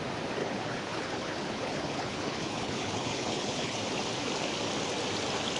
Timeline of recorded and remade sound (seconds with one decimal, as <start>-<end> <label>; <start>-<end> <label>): 0.0-0.4 recorded; 0.4-3.8 remade; 3.8-5.6 recorded